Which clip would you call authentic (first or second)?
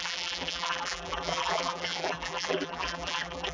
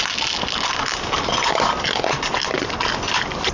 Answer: second